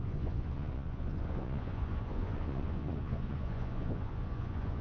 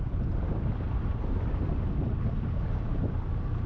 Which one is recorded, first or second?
second